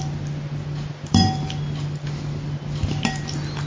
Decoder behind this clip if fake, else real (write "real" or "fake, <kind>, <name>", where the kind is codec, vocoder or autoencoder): real